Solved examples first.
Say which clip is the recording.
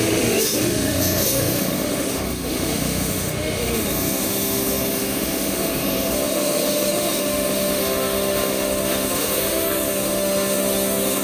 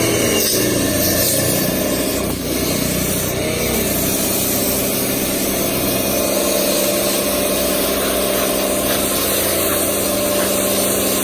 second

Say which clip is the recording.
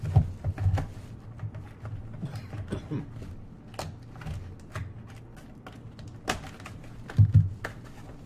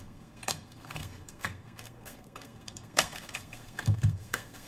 first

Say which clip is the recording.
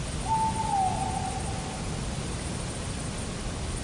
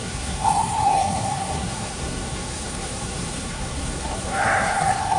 first